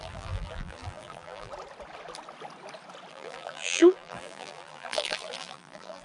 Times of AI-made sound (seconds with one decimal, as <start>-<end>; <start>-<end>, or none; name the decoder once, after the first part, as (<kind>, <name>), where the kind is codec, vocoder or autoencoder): 0.0-1.5 (vocoder, BigVGAN v2); 3.1-6.0